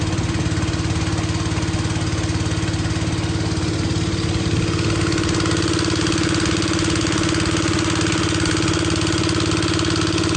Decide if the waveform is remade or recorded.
recorded